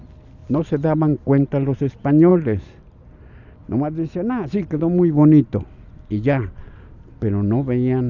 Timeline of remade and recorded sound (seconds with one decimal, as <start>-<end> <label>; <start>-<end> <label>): 0.0-0.4 recorded; 0.4-1.8 remade; 1.8-2.3 recorded; 2.3-3.1 remade; 3.1-8.1 recorded